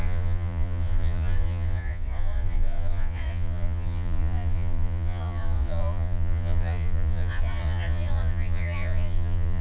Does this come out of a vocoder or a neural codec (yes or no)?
yes